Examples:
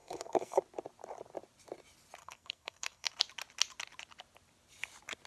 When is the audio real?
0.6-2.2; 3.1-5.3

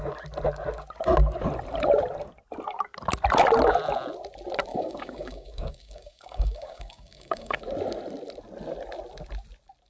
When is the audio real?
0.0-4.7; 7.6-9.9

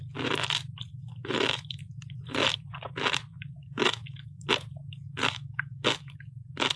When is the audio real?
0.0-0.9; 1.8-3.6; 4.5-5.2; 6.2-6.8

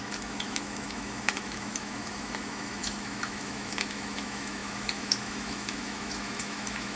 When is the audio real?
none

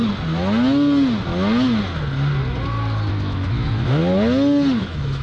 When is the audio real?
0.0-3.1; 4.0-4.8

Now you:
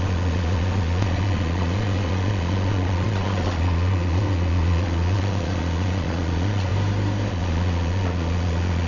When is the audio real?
6.7-7.3